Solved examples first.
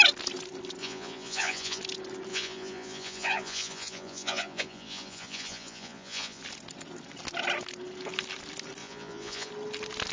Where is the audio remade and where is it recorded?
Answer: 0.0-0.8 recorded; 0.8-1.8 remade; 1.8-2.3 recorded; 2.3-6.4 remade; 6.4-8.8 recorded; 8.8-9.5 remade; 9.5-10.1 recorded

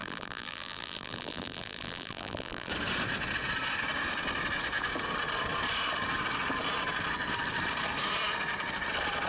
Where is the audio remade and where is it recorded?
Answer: 0.0-2.7 remade; 2.7-9.3 recorded

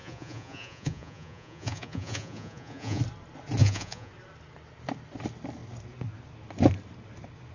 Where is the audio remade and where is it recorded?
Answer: 0.0-3.0 remade; 3.0-3.6 recorded; 3.6-4.1 remade; 4.1-7.5 recorded